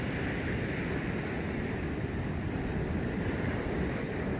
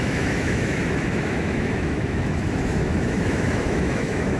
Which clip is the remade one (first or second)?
second